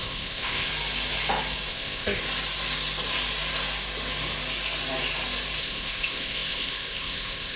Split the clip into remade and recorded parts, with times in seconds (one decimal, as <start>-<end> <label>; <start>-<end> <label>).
0.0-0.7 remade; 0.7-1.7 recorded; 1.7-2.2 remade; 2.2-5.6 recorded; 5.6-7.6 remade